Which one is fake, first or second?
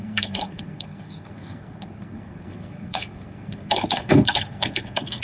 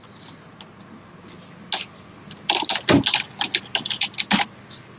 first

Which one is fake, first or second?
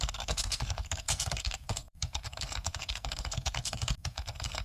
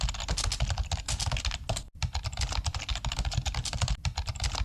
first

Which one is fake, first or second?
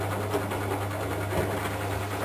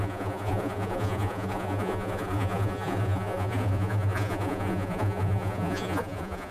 second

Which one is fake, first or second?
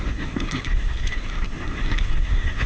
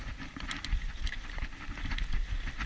first